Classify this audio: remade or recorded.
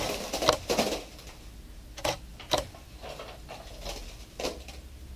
recorded